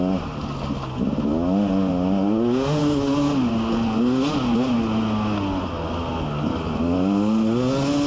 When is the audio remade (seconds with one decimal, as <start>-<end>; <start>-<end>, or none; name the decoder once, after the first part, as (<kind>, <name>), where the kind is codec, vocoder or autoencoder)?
none